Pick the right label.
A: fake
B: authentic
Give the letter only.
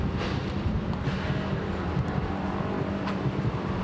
B